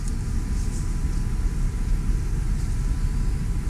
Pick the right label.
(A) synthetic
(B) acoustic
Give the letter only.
B